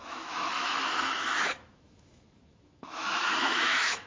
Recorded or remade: remade